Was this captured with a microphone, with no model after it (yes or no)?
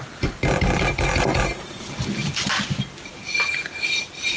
yes